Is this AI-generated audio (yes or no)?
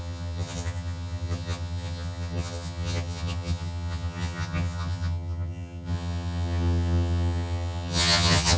yes